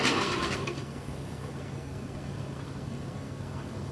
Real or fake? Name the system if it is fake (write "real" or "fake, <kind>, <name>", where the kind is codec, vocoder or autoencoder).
fake, codec, SNAC